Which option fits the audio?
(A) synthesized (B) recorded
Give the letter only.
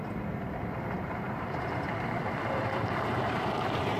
A